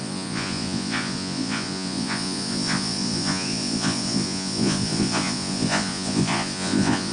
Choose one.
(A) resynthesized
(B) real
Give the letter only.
A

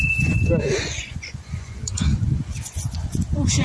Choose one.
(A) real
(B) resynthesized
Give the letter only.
B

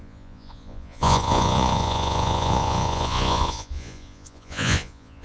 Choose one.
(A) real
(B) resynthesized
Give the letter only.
B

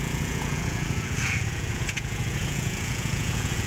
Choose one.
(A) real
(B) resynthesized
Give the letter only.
B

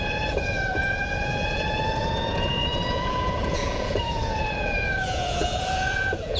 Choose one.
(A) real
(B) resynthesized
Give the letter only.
B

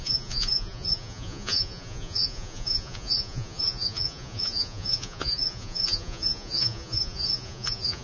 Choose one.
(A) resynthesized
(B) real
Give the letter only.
A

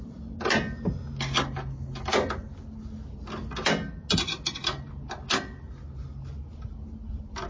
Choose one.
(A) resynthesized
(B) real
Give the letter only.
B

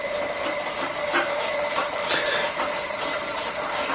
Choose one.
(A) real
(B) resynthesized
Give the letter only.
A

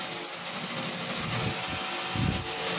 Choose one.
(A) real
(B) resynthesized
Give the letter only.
A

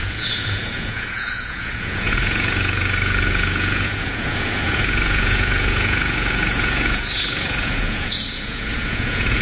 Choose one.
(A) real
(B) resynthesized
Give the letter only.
B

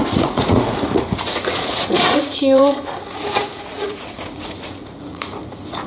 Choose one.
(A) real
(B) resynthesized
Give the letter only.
B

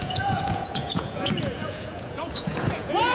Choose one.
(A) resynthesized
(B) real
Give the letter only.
A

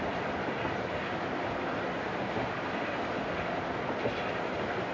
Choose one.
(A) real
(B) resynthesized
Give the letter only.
A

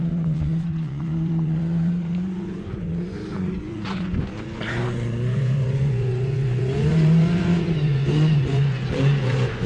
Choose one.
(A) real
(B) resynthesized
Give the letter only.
B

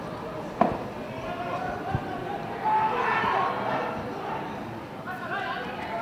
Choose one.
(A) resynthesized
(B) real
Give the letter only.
B